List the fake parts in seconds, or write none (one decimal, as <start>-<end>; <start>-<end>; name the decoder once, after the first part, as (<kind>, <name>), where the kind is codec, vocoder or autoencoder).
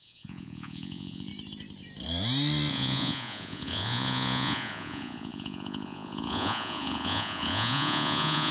0.0-1.3 (vocoder, Vocos); 2.7-8.5